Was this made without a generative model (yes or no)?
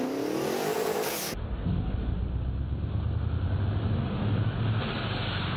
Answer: yes